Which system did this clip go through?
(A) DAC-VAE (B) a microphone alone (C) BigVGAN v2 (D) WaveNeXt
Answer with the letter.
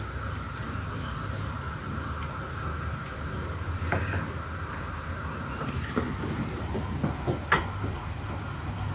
B